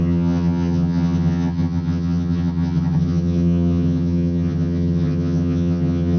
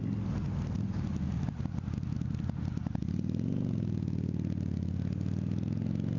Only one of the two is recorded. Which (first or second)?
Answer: second